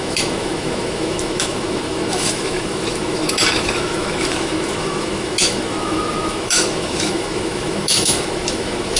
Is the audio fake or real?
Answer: fake